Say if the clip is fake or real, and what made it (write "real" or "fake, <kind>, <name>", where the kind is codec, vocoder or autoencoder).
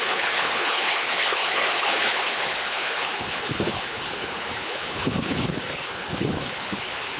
fake, codec, HILCodec